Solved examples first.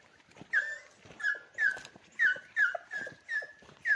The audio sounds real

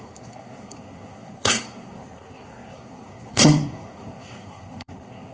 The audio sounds fake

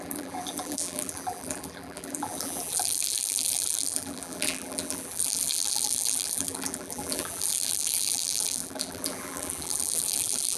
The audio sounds fake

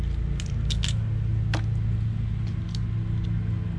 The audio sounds real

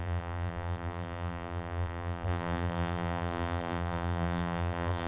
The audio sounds fake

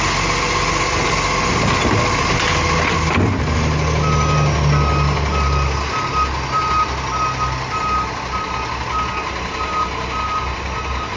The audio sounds real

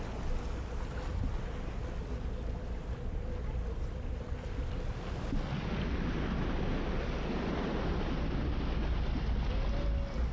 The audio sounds real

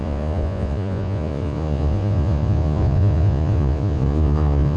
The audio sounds fake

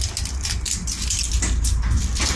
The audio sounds real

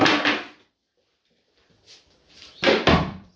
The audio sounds fake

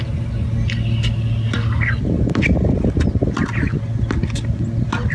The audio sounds real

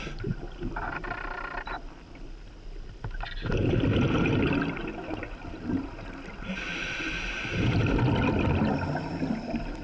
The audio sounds real